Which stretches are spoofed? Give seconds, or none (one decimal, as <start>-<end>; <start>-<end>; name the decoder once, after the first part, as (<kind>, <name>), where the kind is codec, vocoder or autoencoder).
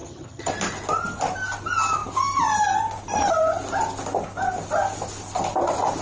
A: 0.0-0.5 (vocoder, HiFi-GAN)